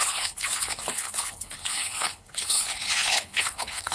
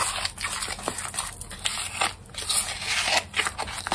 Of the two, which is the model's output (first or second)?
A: first